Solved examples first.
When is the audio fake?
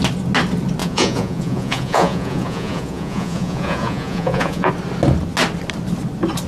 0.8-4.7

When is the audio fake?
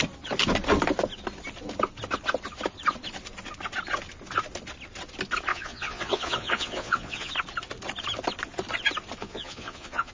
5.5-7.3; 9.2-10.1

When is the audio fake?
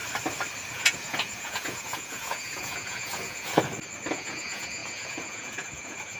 0.7-3.5; 4.1-6.2